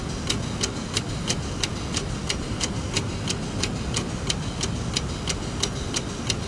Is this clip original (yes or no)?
yes